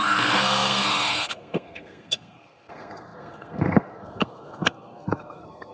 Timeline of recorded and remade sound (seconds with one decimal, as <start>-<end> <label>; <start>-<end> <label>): 0.0-5.7 remade